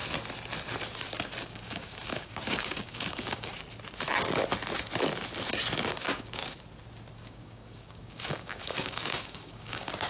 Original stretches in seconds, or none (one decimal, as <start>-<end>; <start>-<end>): 0.0-1.4; 3.5-5.9; 6.4-7.2